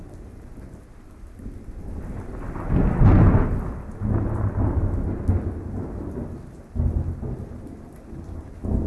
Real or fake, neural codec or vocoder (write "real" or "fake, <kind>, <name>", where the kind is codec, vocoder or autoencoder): real